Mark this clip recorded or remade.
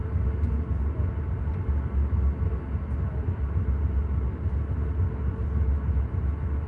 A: recorded